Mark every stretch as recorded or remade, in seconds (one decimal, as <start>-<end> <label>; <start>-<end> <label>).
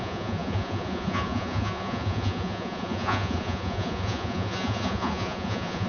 0.0-5.9 remade